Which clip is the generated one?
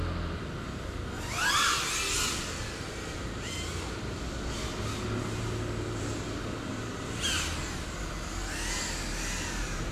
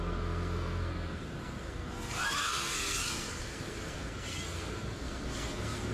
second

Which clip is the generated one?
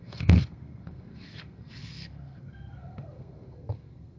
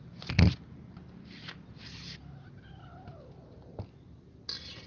first